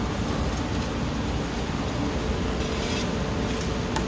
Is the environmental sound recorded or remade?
recorded